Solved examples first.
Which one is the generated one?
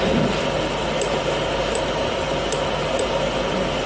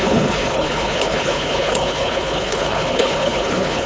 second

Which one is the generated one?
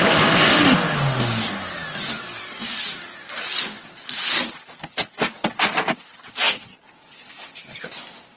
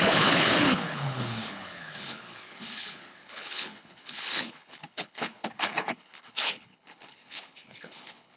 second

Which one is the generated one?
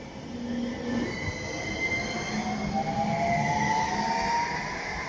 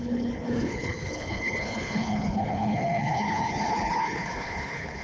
second